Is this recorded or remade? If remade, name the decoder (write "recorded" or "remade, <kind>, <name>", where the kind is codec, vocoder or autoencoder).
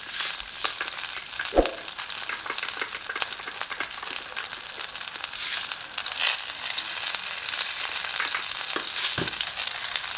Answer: recorded